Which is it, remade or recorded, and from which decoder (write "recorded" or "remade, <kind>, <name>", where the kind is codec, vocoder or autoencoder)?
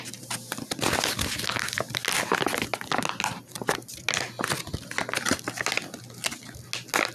recorded